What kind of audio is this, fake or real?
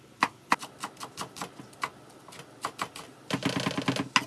real